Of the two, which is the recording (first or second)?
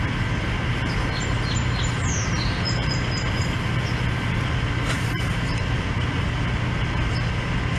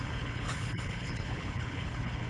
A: first